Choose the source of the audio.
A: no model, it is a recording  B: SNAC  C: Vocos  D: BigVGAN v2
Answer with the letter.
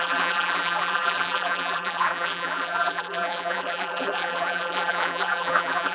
D